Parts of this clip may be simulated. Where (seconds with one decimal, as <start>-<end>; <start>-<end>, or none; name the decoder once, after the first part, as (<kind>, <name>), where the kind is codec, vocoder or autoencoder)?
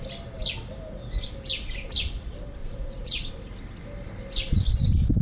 2.6-3.3 (vocoder, Vocos)